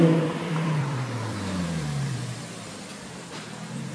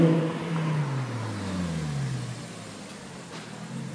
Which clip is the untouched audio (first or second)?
second